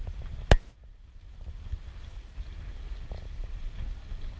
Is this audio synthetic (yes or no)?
no